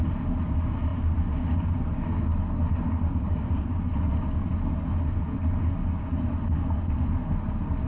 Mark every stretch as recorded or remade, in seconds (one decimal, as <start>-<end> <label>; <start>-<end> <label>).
0.0-7.9 recorded